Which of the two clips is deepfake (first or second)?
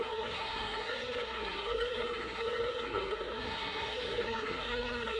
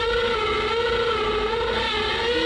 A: first